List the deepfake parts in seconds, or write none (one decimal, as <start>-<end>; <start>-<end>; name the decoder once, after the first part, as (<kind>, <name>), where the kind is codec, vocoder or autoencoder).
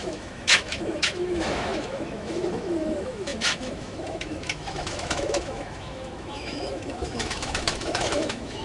0.0-8.6 (autoencoder, DAC-VAE)